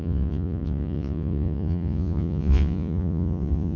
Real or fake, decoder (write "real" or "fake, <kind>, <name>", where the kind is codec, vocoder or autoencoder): fake, vocoder, Vocos